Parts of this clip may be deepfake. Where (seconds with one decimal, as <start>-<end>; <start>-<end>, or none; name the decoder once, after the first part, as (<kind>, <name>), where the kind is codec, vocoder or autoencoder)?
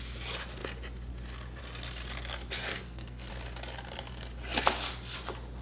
2.7-3.3 (codec, SNAC)